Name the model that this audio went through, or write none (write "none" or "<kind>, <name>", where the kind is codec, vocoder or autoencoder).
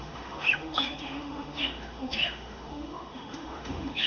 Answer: autoencoder, DAC-VAE